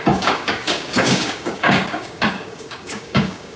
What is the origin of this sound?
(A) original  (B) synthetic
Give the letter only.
B